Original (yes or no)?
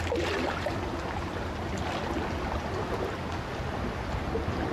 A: yes